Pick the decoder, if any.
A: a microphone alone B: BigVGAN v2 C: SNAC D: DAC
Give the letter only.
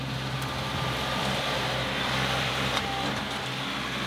B